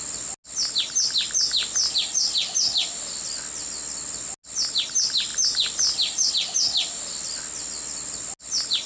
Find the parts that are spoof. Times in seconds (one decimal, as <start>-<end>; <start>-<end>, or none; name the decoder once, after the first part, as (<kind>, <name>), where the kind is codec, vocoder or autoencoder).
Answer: 5.3-6.3 (vocoder, BigVGAN v2)